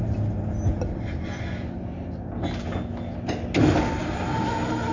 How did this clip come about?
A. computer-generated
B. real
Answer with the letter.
B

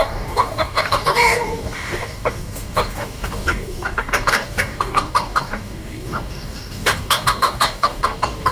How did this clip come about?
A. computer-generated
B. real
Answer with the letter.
A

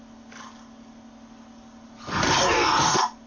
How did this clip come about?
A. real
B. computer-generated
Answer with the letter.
A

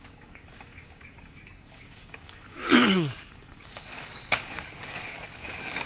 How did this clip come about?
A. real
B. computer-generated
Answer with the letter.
B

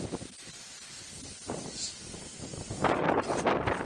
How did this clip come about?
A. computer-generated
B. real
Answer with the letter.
B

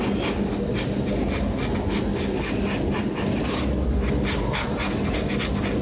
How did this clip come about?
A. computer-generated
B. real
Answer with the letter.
B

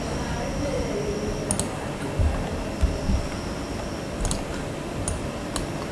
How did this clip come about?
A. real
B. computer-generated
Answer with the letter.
A